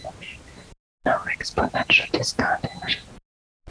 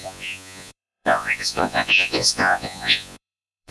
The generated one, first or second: second